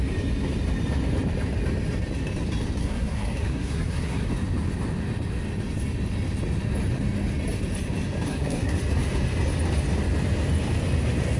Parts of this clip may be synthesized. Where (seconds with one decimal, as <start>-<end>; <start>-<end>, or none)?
2.8-4.3; 8.3-8.8